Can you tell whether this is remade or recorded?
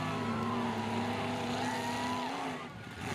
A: recorded